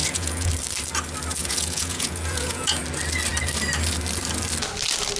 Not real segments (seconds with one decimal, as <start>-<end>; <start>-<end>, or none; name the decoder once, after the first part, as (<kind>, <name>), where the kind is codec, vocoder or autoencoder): 0.0-0.5 (vocoder, Vocos); 1.4-2.8